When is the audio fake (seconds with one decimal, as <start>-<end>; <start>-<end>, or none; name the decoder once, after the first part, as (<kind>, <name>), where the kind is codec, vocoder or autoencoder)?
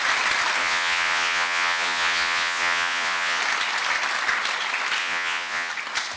0.6-3.4 (vocoder, Vocos); 5.0-5.7